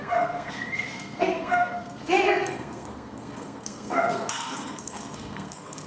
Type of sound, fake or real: fake